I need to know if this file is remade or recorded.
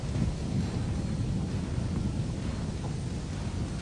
recorded